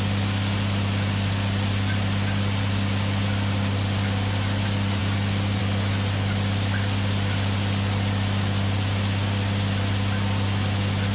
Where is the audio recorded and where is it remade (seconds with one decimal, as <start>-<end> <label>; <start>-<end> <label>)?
0.0-11.1 recorded